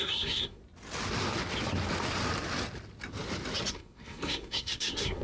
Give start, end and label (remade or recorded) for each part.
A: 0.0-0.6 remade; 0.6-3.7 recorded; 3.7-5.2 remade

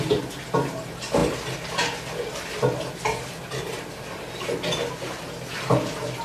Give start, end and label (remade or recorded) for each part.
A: 0.0-6.2 recorded

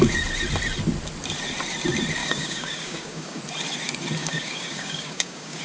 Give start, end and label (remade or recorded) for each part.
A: 0.0-2.2 recorded; 2.2-3.4 remade; 3.4-4.2 recorded; 4.2-5.6 remade

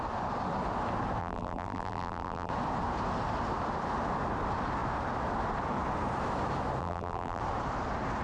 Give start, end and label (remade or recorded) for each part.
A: 0.0-1.2 recorded; 1.2-2.5 remade; 2.5-6.8 recorded; 6.8-7.4 remade; 7.4-8.2 recorded

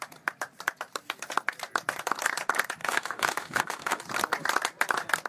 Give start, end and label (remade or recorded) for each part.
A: 0.0-2.8 recorded; 2.8-4.0 remade; 4.0-5.3 recorded

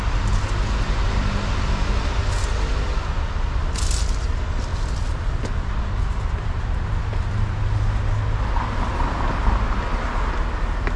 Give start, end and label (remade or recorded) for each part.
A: 0.0-11.0 recorded